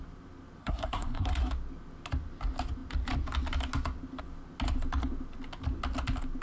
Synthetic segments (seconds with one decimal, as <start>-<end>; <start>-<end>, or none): 0.6-1.5